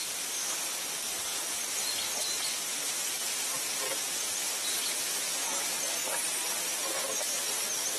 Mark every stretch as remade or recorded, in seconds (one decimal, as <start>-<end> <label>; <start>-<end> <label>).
0.0-8.0 recorded